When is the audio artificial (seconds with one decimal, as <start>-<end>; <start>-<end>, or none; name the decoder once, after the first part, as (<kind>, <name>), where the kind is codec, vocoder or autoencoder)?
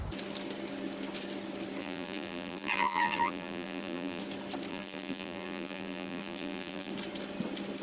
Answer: 1.8-4.2 (vocoder, BigVGAN v2); 4.7-6.9